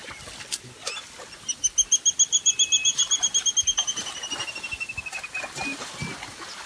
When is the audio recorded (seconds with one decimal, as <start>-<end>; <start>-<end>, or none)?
0.0-6.7